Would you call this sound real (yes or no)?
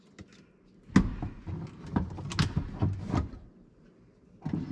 yes